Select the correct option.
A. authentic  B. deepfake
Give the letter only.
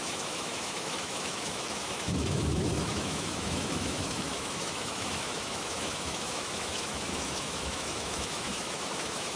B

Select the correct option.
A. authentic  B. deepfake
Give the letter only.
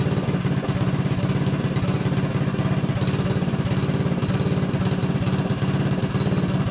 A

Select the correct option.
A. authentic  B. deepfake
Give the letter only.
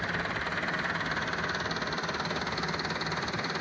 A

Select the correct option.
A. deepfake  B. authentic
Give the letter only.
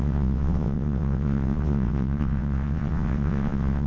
A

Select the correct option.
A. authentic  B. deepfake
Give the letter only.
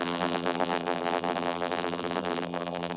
B